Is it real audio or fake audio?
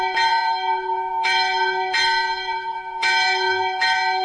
fake